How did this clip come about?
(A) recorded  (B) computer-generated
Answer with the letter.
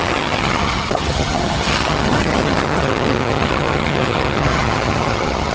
B